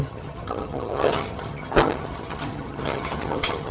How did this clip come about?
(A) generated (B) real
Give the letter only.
A